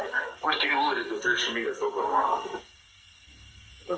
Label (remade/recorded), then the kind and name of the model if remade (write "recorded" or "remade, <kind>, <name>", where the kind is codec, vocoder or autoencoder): remade, codec, SNAC